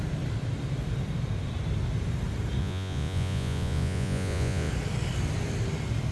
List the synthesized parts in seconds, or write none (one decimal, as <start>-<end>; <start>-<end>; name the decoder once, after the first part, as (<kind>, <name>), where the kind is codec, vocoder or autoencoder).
2.6-4.7 (vocoder, Vocos)